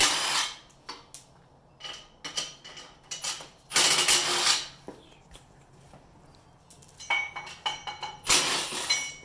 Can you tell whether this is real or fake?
real